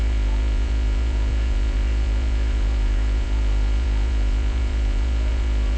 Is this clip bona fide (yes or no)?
no